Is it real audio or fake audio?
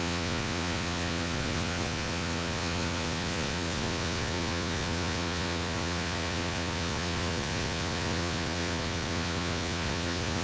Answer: fake